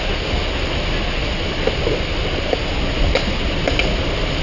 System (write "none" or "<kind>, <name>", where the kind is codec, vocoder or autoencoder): none